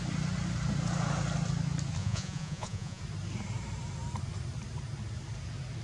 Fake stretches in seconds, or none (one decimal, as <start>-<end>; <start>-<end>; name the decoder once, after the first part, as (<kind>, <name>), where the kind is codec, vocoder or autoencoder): 2.0-3.0 (vocoder, Vocos)